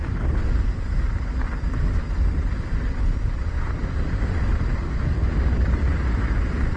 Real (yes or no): yes